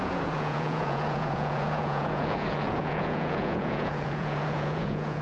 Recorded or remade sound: remade